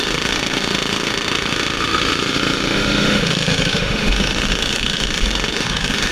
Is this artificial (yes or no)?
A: yes